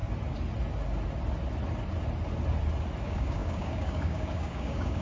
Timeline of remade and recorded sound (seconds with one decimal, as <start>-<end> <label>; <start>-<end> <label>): 0.0-3.0 recorded; 3.0-5.0 remade